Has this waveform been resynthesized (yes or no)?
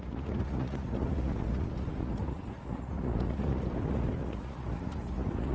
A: yes